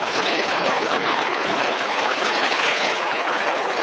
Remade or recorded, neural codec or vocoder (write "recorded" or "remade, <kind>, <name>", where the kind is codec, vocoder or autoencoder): remade, codec, HILCodec